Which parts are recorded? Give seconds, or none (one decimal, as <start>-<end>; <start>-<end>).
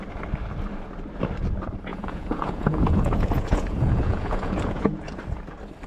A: 0.0-1.9; 5.0-5.9